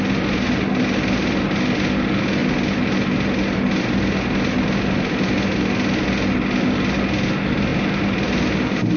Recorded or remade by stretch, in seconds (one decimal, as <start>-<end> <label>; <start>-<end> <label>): 0.0-9.0 recorded